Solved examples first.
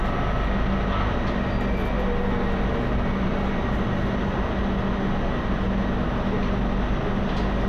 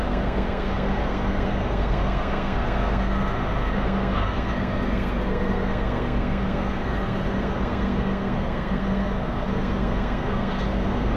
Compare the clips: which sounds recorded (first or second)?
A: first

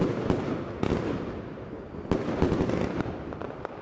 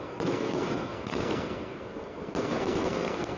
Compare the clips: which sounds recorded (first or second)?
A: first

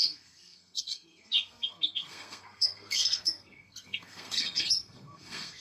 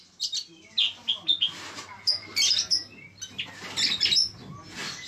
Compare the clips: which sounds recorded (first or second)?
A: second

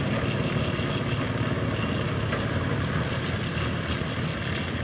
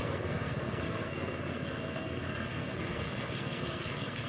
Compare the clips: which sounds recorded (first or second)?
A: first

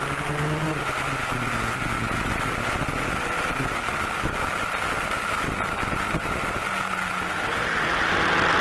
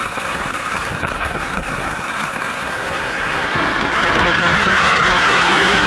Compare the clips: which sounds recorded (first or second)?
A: first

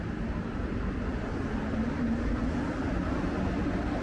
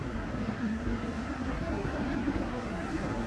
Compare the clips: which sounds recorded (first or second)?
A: first